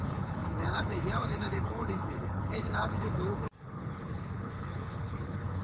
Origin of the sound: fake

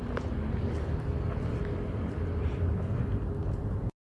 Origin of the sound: real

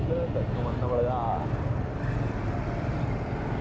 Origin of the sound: real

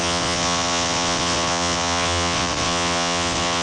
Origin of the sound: fake